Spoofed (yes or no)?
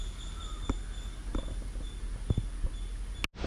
no